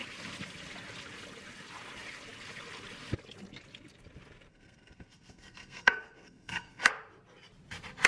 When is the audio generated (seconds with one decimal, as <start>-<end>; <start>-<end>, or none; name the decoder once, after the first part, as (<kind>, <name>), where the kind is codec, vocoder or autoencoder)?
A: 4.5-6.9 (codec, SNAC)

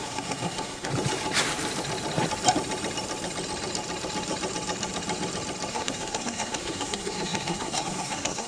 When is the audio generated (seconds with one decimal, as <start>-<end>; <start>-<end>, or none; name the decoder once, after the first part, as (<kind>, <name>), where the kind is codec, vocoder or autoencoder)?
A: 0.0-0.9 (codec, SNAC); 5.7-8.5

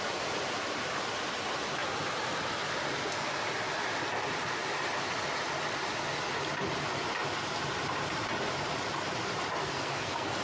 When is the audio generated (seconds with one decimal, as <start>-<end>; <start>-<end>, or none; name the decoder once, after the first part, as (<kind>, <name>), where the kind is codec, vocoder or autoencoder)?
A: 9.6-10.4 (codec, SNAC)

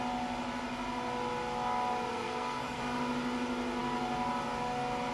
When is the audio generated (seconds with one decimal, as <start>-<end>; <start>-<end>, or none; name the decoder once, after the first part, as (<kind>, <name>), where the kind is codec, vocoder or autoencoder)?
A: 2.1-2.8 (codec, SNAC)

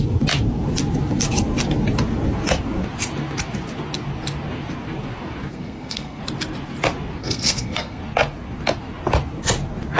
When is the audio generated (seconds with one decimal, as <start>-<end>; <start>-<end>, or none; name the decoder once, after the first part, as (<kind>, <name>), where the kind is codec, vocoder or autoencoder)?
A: 5.5-6.2 (codec, SNAC); 7.2-8.0